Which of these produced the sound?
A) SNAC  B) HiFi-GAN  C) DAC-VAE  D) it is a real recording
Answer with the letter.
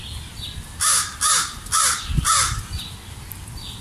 D